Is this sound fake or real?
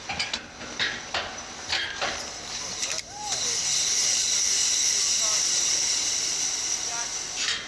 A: real